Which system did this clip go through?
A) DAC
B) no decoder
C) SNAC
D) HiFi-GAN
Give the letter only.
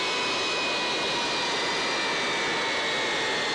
B